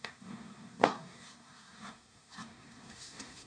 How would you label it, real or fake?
fake